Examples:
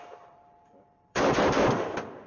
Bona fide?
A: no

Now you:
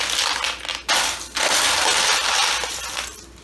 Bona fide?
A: yes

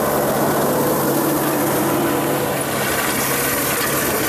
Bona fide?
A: yes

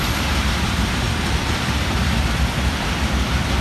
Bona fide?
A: no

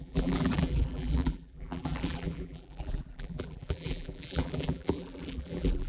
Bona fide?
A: no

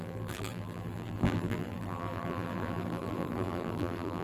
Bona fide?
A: no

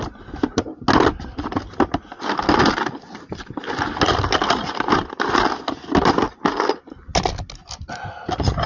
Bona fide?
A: yes